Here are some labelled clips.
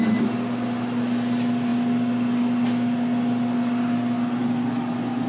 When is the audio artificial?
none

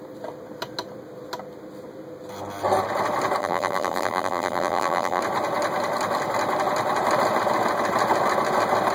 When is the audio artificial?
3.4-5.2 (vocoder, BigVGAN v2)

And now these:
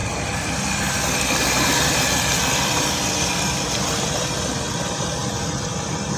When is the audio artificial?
none